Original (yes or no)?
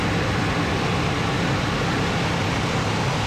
yes